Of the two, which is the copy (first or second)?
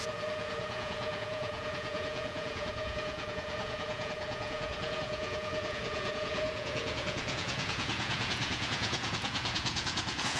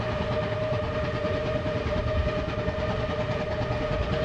first